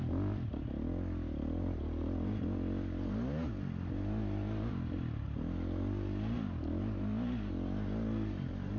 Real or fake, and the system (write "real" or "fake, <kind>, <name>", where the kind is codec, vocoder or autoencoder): real